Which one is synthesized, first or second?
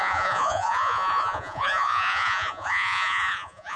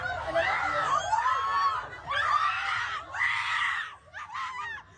first